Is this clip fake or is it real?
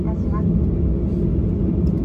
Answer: real